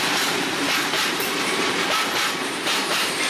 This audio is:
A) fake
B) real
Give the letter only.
A